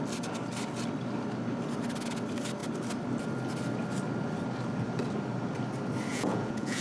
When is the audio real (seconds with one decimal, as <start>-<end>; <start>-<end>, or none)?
0.0-6.1